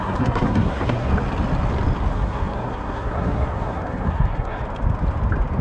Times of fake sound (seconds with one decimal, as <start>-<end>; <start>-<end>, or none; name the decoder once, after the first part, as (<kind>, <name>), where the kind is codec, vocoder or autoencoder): 0.0-1.1 (codec, SNAC); 2.1-4.6